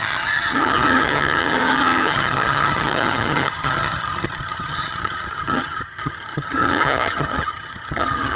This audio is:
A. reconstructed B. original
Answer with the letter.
A